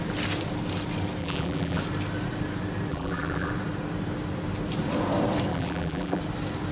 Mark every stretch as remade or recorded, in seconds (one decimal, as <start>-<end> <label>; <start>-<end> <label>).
0.0-1.2 recorded; 1.2-1.8 remade; 1.8-2.9 recorded; 2.9-3.5 remade; 3.5-5.5 recorded; 5.5-6.2 remade; 6.2-6.7 recorded